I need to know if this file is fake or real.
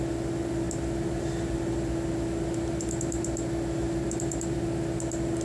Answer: real